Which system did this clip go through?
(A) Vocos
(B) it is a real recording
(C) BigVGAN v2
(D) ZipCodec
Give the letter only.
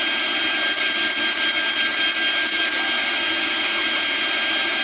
B